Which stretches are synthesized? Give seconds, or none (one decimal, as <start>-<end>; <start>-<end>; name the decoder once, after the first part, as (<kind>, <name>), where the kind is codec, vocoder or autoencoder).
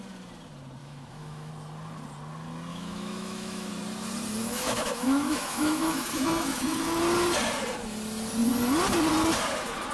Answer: 0.8-1.5 (autoencoder, DAC-VAE); 2.7-3.7; 4.4-7.0